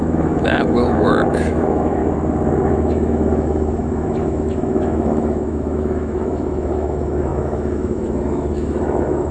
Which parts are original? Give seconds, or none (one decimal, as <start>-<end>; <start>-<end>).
2.0-2.7